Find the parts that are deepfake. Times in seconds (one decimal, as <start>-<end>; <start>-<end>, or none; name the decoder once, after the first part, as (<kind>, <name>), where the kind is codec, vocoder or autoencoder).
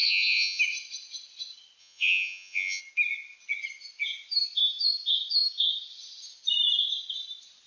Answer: 0.0-0.6 (vocoder, Vocos); 1.8-2.8